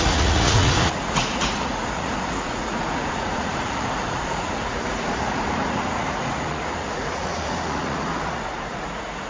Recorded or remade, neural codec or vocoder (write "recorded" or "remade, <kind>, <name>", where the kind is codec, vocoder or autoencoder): remade, vocoder, Vocos